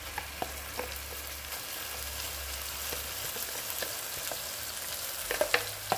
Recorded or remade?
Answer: recorded